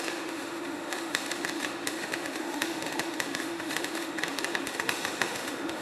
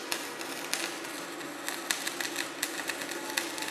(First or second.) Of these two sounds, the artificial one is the first